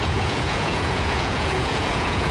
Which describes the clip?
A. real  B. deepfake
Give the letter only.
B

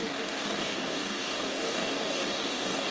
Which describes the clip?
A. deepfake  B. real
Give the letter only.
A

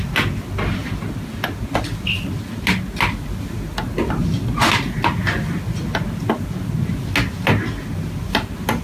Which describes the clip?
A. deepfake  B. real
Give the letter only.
B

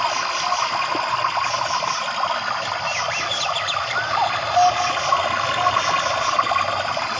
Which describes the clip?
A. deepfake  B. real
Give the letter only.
B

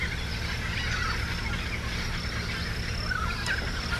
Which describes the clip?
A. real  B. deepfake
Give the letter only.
A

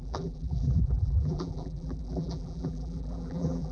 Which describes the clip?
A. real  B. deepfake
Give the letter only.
B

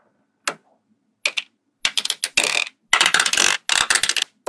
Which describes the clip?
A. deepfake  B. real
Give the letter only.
B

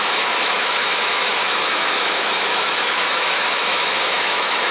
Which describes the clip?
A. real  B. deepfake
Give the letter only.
B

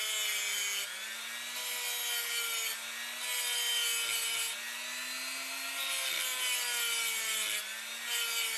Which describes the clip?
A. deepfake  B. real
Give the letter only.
B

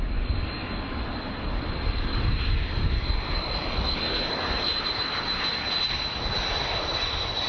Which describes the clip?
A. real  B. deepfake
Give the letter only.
A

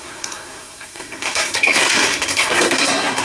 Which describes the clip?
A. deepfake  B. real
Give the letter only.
A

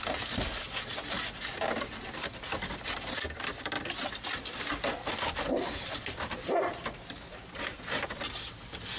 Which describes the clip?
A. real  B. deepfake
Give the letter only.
A